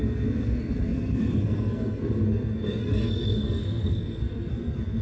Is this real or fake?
fake